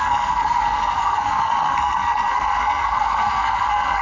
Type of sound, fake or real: fake